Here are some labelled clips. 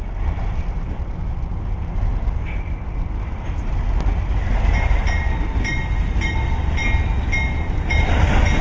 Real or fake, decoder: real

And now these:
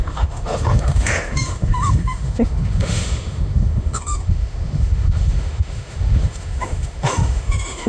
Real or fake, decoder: fake, autoencoder, DAC-VAE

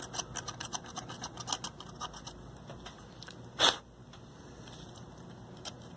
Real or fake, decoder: real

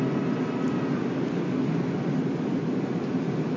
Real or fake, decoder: real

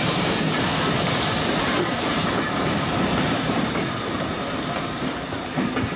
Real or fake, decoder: fake, vocoder, BigVGAN v2